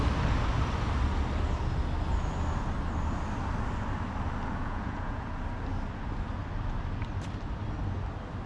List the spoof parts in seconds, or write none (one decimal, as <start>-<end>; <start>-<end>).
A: 4.6-5.3